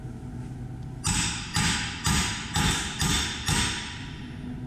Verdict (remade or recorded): recorded